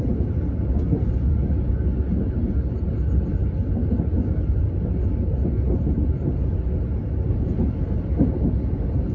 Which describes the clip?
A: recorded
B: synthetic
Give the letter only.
A